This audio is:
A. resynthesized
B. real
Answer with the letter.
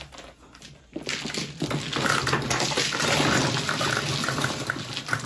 B